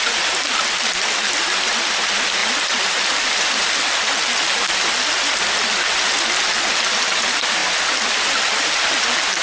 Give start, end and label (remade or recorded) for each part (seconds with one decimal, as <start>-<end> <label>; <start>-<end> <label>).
0.0-9.4 recorded